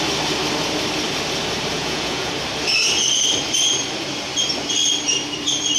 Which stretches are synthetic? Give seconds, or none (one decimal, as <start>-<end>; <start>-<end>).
1.7-2.3